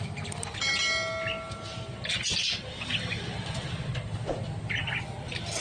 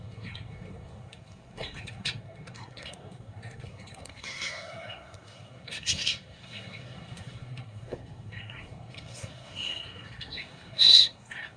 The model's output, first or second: second